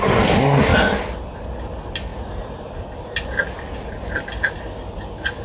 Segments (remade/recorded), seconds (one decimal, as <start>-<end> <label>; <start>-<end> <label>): 0.0-5.4 recorded